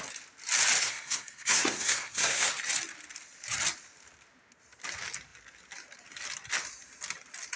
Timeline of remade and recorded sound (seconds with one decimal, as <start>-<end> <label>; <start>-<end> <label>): 0.0-0.8 recorded; 0.8-2.5 remade; 2.5-7.6 recorded